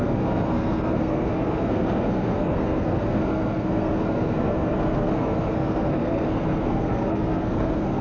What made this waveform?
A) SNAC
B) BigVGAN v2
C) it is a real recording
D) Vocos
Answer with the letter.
A